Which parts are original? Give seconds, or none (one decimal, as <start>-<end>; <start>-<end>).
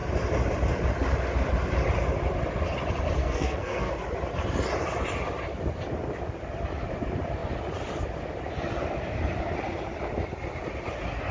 0.0-3.2; 3.9-11.3